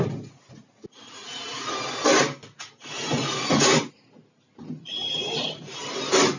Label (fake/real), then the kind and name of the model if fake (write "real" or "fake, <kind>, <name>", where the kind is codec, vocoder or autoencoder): real